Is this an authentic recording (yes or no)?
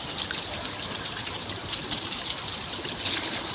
no